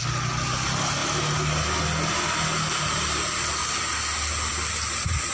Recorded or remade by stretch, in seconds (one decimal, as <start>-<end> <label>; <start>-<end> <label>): 0.0-5.3 recorded